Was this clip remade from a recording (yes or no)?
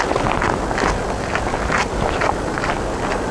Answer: no